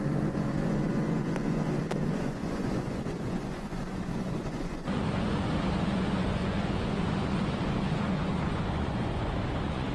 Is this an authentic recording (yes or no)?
no